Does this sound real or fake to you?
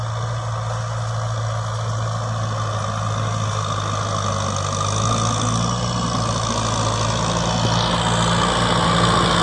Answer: real